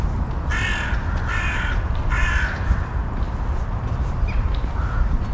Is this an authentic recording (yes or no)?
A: yes